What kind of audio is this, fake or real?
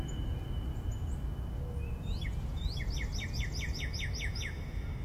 real